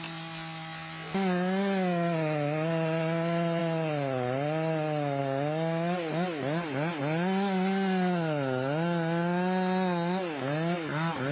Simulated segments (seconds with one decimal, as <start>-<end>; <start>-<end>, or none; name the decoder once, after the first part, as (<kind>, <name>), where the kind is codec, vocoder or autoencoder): none